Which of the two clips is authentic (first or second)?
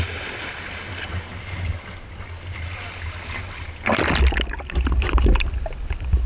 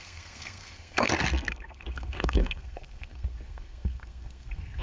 first